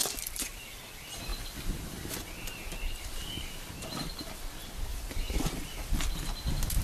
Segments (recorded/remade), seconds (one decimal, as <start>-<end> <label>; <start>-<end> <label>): 0.0-0.8 remade; 0.8-4.9 recorded; 4.9-6.0 remade; 6.0-6.8 recorded